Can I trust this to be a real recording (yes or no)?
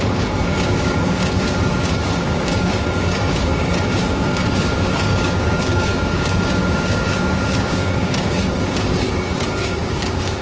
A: no